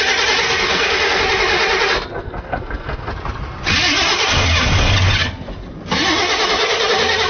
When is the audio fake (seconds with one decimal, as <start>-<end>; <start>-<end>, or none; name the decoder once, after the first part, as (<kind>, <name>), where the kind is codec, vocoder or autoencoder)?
0.4-1.2 (codec, SNAC); 2.2-3.1